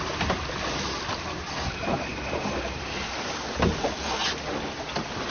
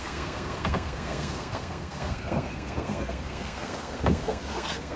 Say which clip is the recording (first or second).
first